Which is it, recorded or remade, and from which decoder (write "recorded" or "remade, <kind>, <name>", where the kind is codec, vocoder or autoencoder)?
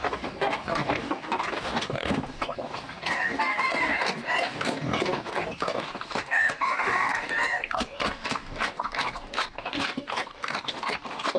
remade, codec, DAC